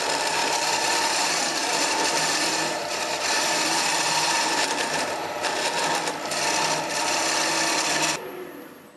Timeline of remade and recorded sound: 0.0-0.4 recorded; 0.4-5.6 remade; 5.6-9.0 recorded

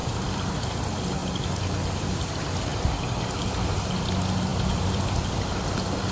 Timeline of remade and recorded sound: 0.0-0.7 remade; 0.7-1.2 recorded; 1.2-2.3 remade; 2.3-2.7 recorded; 2.7-3.2 remade; 3.2-4.5 recorded; 4.5-5.0 remade; 5.0-6.1 recorded

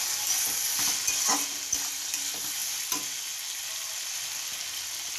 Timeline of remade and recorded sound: 0.0-5.2 recorded

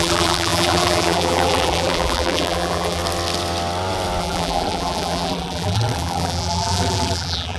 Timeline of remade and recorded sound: 0.0-3.0 remade; 3.0-4.2 recorded; 4.2-7.6 remade

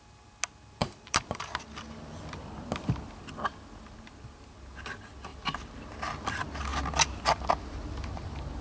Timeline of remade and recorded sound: 0.0-0.8 recorded; 0.8-1.5 remade; 1.5-8.6 recorded